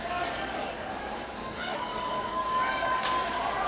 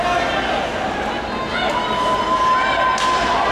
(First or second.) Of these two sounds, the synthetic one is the first